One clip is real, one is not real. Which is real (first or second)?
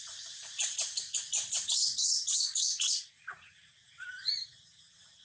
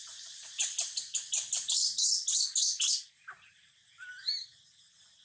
second